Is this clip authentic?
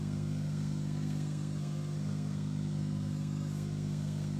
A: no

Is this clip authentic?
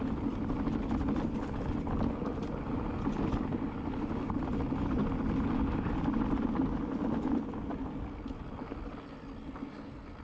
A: yes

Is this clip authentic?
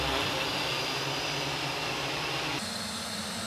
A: yes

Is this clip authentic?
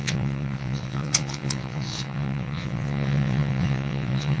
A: no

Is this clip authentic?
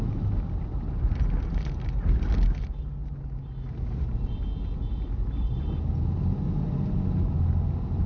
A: yes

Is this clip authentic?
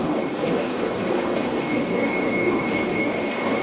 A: no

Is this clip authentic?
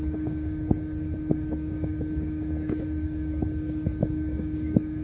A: no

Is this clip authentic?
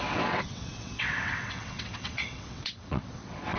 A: no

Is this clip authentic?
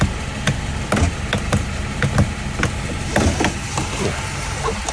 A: yes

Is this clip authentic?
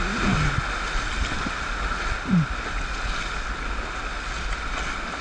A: yes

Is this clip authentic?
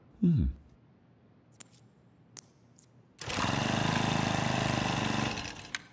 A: yes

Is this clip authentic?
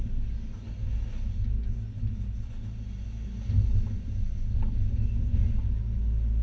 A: yes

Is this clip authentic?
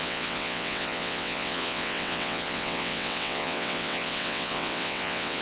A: no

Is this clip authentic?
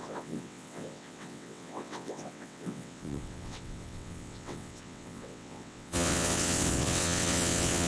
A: no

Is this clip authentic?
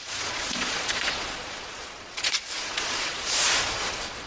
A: no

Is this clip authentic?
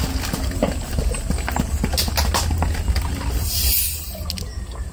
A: yes